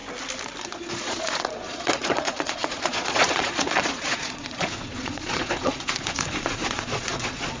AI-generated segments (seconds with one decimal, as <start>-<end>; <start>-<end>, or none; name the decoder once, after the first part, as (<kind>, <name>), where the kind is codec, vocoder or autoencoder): 0.6-7.6 (vocoder, Vocos)